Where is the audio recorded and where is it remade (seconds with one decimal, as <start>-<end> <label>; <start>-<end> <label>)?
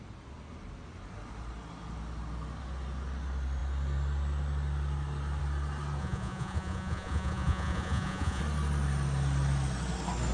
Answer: 0.0-6.0 recorded; 6.0-8.4 remade; 8.4-10.3 recorded